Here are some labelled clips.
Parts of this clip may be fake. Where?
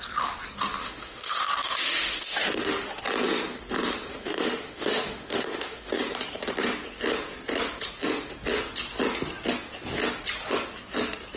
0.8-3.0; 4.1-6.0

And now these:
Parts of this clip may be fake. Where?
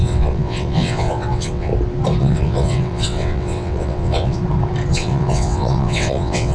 0.0-1.7; 2.2-4.4; 4.9-6.5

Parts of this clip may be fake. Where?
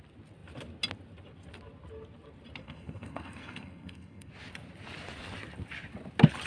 2.6-4.3